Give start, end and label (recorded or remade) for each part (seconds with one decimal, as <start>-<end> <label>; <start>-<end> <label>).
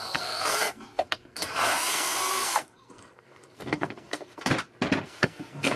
0.0-4.5 remade; 4.5-5.0 recorded; 5.0-5.8 remade